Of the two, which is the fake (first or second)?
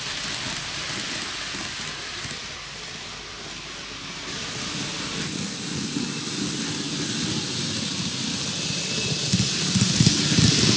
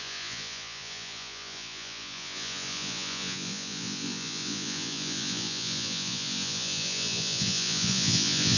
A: second